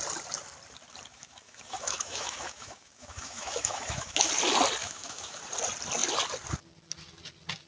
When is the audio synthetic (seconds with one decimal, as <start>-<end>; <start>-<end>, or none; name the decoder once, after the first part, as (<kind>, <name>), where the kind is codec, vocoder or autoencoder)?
1.1-4.3 (autoencoder, DAC-VAE); 4.8-5.4